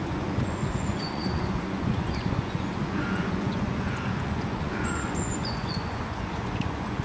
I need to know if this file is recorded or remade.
remade